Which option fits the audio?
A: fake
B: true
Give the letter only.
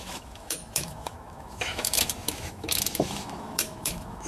A